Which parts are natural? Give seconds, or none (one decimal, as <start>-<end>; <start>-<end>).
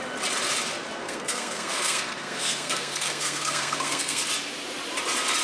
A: 0.0-1.0; 4.2-5.4